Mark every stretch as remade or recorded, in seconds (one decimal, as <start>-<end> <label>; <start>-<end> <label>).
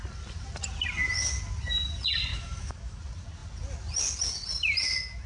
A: 0.0-2.3 recorded; 2.3-3.0 remade; 3.0-5.3 recorded